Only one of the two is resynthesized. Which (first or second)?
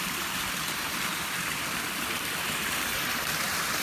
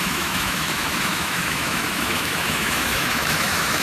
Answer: second